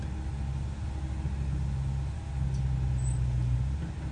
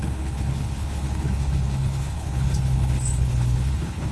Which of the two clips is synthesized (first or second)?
second